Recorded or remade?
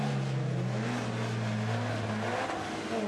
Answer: recorded